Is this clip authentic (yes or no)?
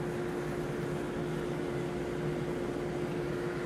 yes